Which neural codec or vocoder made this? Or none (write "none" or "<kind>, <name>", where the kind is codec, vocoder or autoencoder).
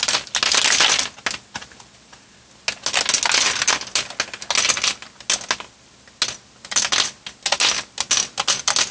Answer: none